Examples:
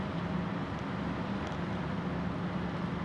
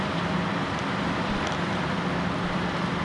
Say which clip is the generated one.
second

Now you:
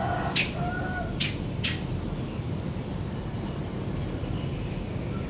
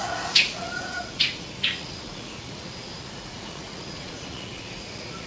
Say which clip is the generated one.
second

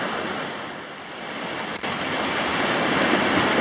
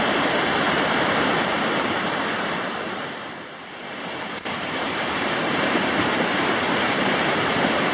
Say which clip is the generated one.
second